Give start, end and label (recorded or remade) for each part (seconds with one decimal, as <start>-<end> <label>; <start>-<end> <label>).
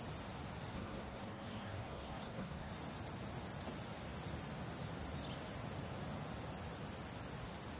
0.0-0.7 recorded; 0.7-2.7 remade; 2.7-7.8 recorded